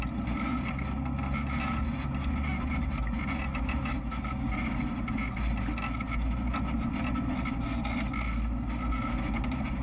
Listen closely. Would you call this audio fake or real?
real